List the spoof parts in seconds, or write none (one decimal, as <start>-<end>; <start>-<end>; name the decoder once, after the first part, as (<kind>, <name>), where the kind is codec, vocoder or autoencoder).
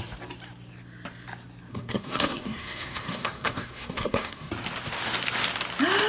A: 1.7-4.5 (codec, SNAC)